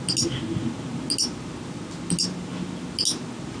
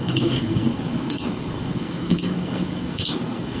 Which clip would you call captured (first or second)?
first